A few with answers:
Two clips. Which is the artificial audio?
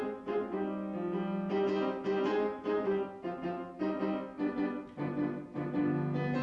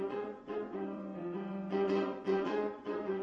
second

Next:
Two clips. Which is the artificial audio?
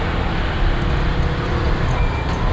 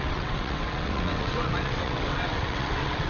second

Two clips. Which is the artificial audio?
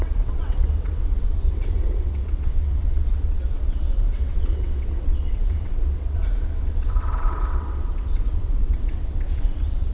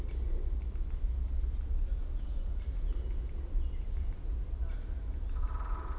first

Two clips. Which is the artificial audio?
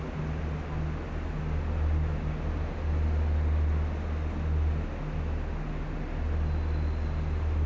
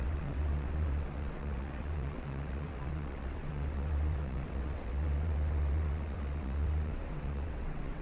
second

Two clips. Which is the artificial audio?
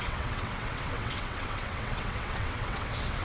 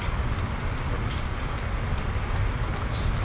first